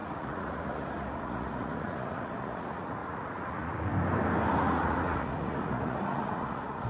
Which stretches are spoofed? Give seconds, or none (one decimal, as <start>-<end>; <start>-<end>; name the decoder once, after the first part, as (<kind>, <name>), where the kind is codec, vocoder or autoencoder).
0.0-3.9 (vocoder, Vocos); 4.6-6.9